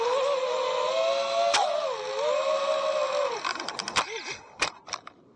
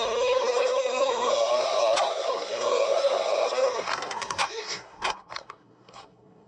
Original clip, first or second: first